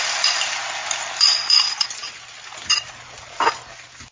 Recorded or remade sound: recorded